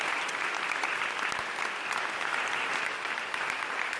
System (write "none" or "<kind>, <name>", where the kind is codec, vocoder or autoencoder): none